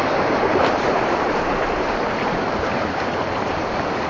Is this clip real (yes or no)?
no